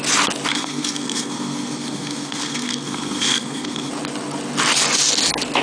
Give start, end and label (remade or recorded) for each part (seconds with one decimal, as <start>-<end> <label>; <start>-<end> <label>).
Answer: 0.0-0.5 recorded; 0.5-3.9 remade; 3.9-5.6 recorded

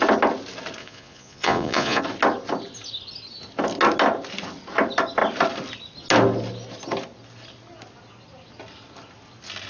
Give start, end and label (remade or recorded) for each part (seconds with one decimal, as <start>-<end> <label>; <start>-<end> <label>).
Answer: 0.0-0.8 recorded; 0.8-2.0 remade; 2.0-9.7 recorded

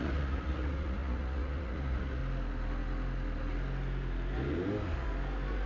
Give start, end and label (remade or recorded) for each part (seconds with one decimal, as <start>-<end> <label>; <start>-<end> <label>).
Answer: 0.0-2.2 remade; 2.2-5.7 recorded